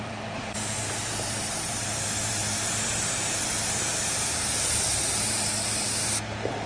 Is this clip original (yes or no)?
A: no